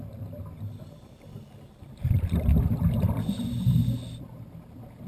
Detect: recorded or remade recorded